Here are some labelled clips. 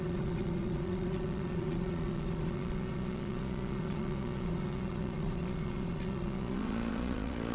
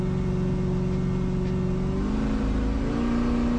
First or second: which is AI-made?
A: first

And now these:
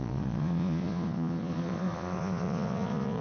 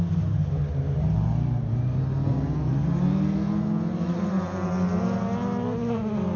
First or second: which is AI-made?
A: first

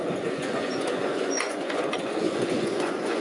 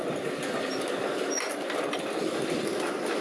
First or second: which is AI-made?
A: first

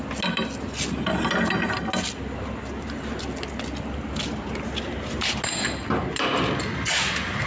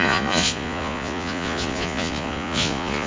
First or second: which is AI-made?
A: second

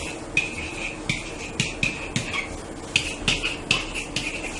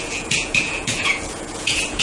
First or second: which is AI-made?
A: second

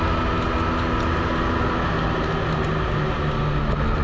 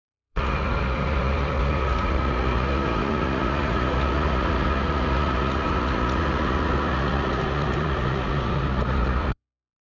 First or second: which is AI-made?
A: second